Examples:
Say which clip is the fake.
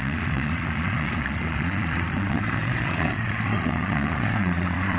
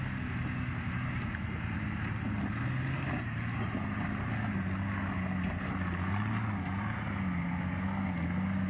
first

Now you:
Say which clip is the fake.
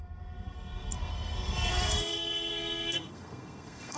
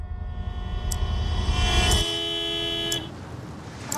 first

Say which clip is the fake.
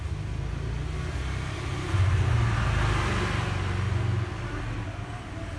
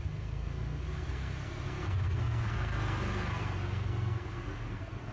second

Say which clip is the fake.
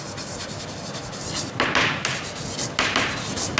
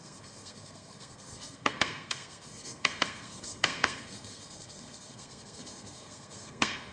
second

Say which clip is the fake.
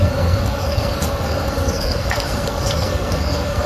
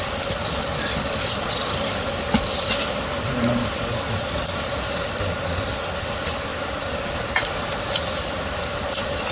first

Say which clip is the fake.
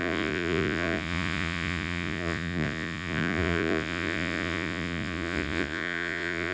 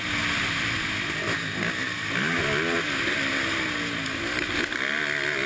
first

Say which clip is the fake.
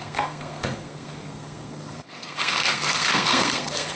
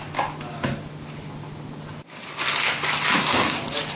first